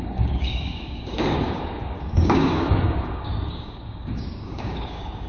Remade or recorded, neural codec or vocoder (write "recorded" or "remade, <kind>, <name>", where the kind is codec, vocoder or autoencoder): remade, codec, DAC